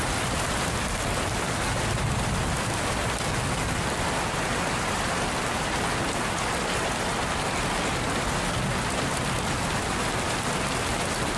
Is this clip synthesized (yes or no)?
no